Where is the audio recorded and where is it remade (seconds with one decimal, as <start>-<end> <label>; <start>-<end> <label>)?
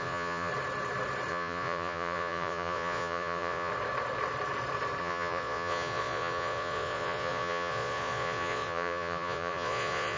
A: 0.0-0.5 remade; 0.5-1.3 recorded; 1.3-3.7 remade; 3.7-5.0 recorded; 5.0-10.2 remade